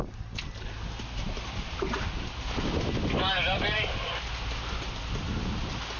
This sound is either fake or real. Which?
real